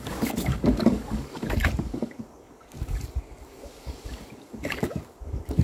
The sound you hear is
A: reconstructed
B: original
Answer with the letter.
A